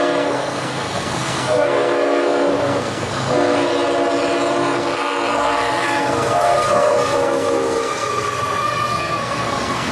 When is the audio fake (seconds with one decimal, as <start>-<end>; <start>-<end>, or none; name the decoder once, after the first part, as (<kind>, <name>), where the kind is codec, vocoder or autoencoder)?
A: 0.0-3.7 (codec, SNAC); 4.5-9.9